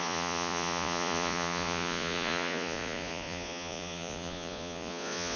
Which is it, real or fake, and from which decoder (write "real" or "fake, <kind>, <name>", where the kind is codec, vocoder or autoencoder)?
fake, vocoder, Vocos